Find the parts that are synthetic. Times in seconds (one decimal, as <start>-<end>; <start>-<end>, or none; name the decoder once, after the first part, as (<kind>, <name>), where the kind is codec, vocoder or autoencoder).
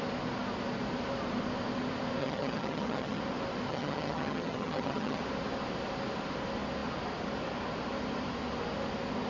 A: 2.2-3.2 (vocoder, HiFi-GAN); 3.7-5.2